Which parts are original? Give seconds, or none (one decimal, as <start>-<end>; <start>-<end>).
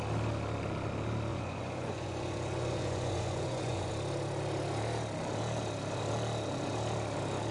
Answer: 0.0-1.3; 3.9-7.5